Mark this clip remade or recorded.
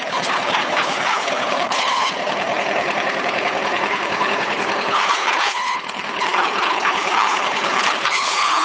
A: remade